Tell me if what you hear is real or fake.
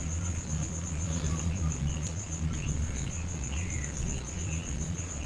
fake